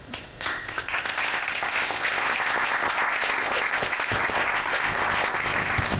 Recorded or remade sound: remade